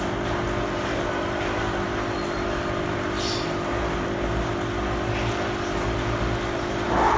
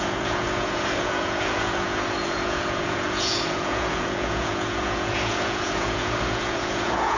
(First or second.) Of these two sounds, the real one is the first